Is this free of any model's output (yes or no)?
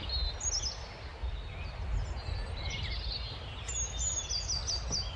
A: yes